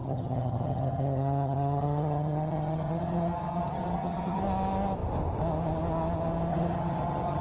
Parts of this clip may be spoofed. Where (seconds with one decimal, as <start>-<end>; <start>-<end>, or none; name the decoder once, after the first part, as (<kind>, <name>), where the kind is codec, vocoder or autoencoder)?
0.0-4.4 (vocoder, HiFi-GAN); 6.5-7.4

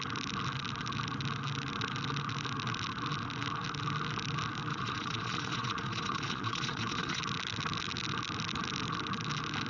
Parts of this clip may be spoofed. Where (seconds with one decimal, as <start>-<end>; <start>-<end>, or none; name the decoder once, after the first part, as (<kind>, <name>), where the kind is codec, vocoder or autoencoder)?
4.7-7.2 (vocoder, Vocos)

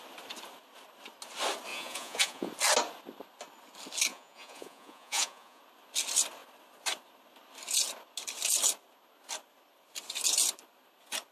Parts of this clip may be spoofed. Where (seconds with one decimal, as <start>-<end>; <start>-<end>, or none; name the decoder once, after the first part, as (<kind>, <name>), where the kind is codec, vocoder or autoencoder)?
1.7-2.5 (vocoder, Vocos); 4.1-5.6

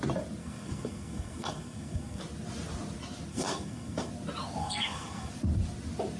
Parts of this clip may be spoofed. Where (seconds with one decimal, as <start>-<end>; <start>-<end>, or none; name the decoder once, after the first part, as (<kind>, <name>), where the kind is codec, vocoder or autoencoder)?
0.4-2.2 (codec, SNAC); 3.3-4.1; 4.6-5.3

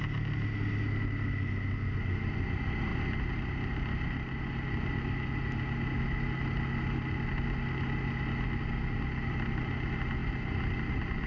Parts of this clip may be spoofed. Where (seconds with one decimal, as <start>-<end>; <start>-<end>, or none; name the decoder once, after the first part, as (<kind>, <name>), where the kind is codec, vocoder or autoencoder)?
none

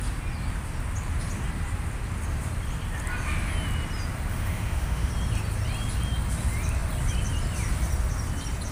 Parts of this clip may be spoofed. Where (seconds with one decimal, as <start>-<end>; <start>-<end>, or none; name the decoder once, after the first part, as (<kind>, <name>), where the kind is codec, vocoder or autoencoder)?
4.3-5.1 (autoencoder, DAC-VAE)

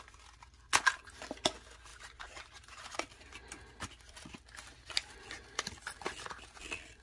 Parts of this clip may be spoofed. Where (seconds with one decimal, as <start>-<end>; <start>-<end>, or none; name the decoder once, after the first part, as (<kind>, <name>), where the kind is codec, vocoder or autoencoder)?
none

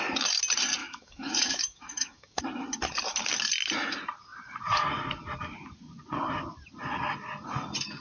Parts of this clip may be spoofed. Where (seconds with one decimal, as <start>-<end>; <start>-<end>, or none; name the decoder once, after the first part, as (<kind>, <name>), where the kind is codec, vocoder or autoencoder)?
0.8-2.4 (autoencoder, DAC-VAE)